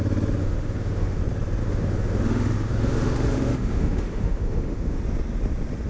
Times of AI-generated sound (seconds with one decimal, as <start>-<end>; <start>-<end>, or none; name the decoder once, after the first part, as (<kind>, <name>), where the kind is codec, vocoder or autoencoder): 0.4-1.2 (autoencoder, DAC-VAE); 1.6-5.0